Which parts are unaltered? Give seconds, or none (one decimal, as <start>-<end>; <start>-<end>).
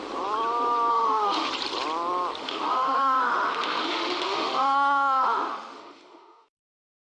0.0-0.9; 1.5-2.4; 6.6-7.1